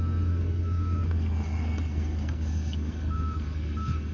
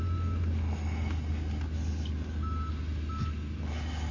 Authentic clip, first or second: second